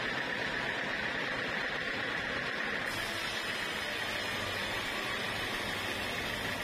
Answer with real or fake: real